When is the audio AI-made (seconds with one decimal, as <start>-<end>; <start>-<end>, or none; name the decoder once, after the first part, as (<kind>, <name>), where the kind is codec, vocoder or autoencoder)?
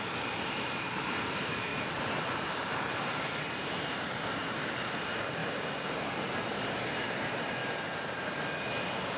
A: 0.0-1.7 (vocoder, BigVGAN v2); 2.5-5.4; 6.5-7.6; 8.6-9.2